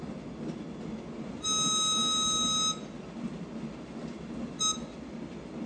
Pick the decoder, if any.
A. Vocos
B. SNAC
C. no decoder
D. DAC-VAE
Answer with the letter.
C